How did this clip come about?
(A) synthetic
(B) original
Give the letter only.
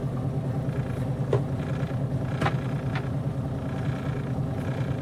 B